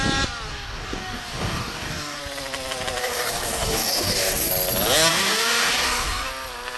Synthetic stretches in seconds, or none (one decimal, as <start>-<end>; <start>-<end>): 0.5-2.2; 3.0-4.5; 5.1-6.3